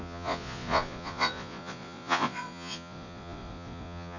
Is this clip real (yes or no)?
no